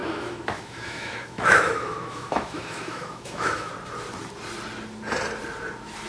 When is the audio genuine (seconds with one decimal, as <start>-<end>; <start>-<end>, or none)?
3.7-6.1